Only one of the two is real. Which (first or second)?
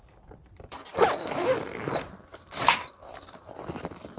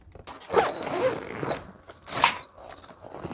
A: second